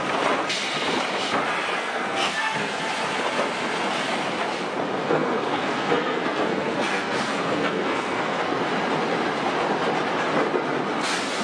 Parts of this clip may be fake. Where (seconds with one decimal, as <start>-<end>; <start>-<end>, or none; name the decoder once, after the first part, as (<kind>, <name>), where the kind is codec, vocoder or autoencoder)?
1.7-2.8 (codec, SNAC); 5.0-8.6